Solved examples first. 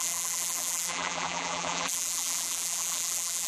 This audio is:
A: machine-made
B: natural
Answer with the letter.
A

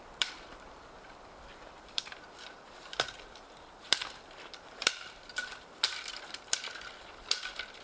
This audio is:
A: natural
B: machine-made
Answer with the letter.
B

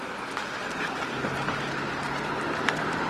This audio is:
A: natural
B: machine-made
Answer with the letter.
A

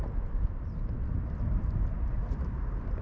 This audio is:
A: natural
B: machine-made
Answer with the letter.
A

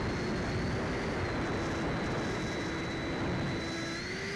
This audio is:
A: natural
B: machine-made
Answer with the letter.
A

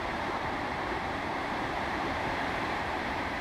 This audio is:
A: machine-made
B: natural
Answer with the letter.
A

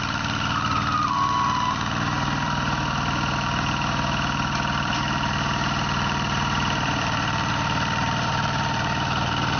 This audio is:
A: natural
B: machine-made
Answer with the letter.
B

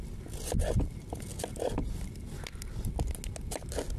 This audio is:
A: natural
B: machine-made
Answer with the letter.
A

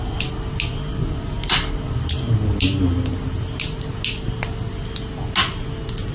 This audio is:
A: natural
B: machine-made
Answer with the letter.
A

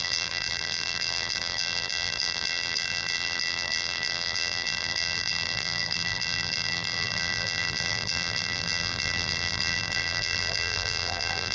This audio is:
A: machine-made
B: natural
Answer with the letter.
A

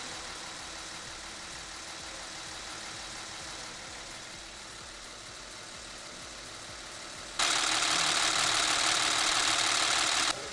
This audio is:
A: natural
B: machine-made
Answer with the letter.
B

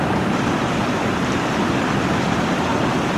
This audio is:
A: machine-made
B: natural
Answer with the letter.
B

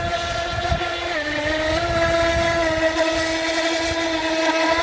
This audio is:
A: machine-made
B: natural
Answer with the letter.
B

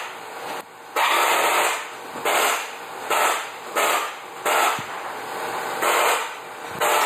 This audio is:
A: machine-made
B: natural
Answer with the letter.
B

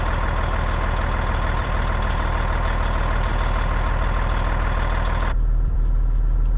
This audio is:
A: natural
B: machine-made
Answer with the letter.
B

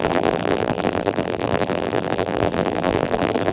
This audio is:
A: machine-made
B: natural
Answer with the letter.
A